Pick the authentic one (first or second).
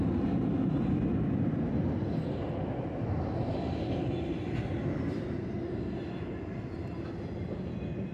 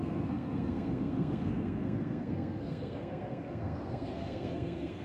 first